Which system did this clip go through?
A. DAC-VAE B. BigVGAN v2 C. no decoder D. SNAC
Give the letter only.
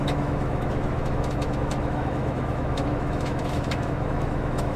A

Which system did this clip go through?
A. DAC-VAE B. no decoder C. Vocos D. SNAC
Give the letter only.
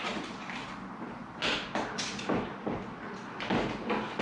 B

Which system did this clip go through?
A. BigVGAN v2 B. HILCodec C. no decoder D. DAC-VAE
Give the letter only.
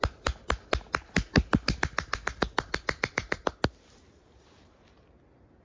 C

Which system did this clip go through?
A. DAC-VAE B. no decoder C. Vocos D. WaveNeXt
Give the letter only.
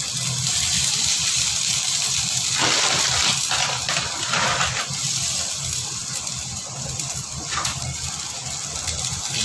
B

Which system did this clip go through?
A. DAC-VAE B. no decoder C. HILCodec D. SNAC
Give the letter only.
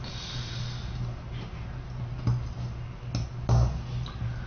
B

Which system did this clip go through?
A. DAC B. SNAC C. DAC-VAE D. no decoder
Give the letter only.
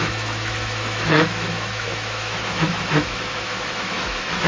C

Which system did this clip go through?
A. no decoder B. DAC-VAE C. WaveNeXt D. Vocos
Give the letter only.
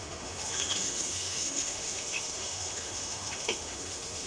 B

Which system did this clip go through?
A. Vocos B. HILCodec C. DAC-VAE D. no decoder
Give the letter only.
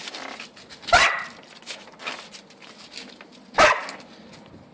D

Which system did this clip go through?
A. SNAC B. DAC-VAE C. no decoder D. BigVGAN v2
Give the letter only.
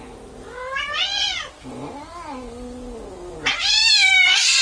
C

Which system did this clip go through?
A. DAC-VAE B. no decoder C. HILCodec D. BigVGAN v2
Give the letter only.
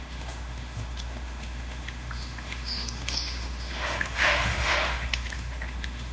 A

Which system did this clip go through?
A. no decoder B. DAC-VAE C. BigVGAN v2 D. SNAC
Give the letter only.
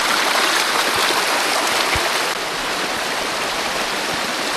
A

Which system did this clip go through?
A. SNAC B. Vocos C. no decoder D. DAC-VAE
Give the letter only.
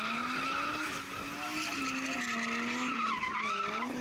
C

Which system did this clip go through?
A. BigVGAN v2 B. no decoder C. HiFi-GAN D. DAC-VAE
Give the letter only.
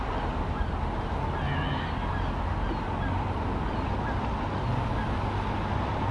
B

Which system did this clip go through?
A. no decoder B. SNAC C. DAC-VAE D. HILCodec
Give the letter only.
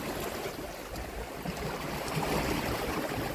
A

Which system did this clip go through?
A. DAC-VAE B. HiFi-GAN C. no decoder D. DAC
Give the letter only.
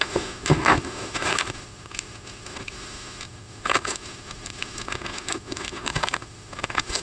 A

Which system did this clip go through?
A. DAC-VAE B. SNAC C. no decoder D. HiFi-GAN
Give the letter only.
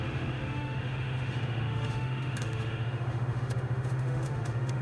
A